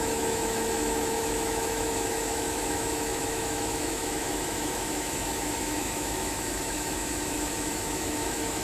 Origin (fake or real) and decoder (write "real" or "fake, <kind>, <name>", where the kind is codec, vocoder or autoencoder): fake, autoencoder, DAC-VAE